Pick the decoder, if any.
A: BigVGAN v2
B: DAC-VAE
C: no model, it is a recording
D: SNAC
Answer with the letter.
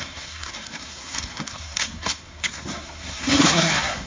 D